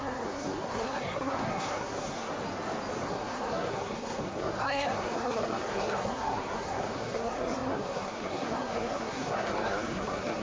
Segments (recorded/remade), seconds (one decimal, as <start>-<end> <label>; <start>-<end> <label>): 0.0-2.3 remade; 2.3-3.0 recorded; 3.0-10.4 remade